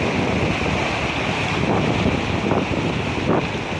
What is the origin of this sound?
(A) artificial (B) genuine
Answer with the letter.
B